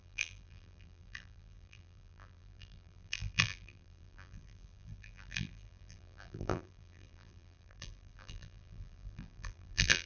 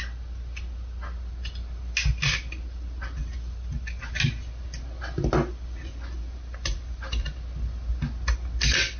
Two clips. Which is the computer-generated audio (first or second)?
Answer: first